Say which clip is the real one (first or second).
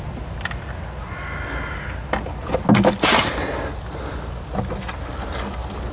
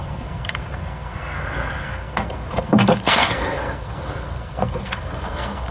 first